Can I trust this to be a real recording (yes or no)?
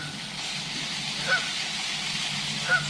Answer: yes